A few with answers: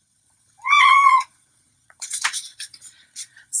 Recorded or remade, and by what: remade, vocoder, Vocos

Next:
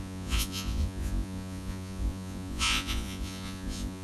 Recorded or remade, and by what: remade, vocoder, Vocos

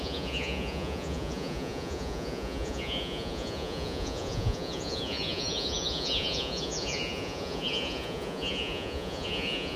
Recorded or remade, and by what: remade, vocoder, Vocos